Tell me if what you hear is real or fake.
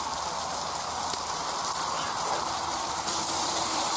fake